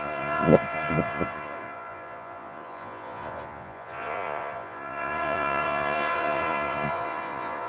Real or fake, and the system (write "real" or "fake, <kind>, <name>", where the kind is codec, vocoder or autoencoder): fake, vocoder, Vocos